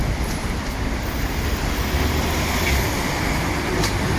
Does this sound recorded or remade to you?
remade